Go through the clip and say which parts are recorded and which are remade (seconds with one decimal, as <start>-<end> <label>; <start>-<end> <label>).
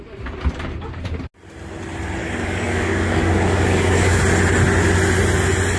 0.0-2.2 recorded; 2.2-4.2 remade; 4.2-5.8 recorded